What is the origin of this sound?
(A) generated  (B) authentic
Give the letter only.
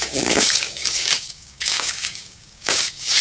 A